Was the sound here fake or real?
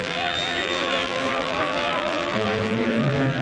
fake